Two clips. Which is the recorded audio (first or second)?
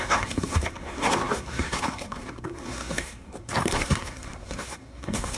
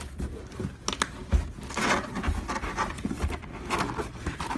second